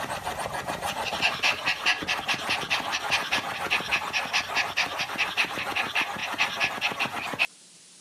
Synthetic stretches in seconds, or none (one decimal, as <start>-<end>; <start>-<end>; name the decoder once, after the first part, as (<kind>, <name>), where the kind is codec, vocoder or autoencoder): none